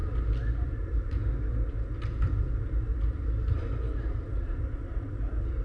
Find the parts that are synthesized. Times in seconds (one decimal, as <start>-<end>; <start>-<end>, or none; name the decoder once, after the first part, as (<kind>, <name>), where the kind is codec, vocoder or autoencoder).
0.5-1.2 (vocoder, BigVGAN v2); 4.6-5.6